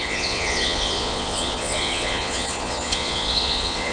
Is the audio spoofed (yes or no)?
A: yes